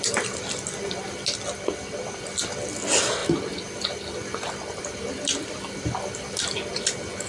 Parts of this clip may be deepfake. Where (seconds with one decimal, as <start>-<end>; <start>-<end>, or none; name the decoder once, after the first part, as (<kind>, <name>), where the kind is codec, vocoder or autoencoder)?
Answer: none